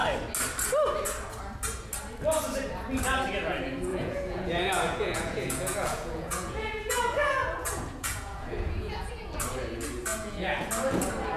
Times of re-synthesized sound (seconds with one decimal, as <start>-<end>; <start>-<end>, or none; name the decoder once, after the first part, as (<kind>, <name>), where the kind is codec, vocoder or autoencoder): 3.9-9.2 (vocoder, Vocos); 10.1-10.7